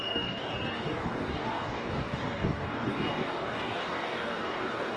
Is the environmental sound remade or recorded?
remade